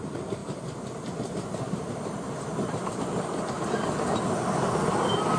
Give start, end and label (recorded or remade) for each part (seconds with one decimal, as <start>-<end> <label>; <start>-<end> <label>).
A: 0.0-5.4 recorded